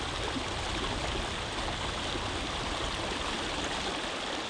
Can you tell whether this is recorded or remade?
recorded